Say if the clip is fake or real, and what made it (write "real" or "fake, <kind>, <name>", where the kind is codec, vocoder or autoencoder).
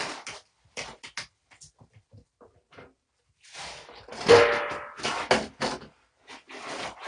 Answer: real